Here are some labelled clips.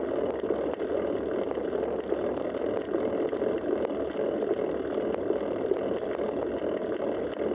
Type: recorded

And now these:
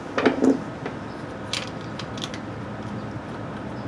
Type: recorded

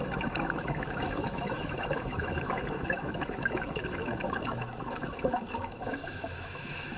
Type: remade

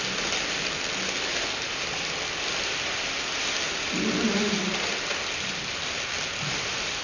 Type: recorded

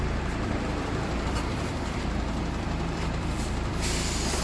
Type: remade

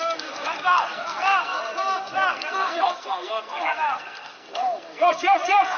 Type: remade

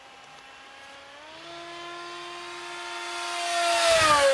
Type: recorded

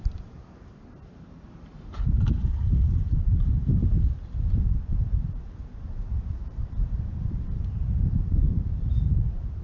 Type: remade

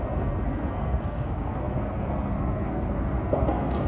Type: remade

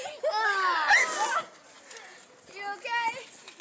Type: recorded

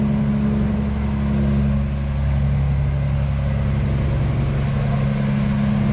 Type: recorded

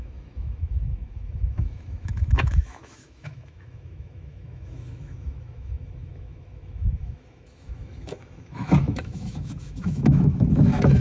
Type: remade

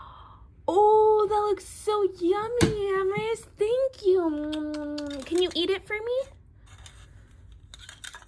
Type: recorded